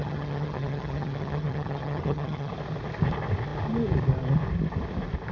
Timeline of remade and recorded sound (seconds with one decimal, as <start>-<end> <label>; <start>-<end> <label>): 0.0-2.5 remade; 2.5-5.3 recorded